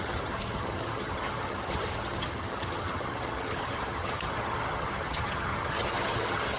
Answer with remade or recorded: remade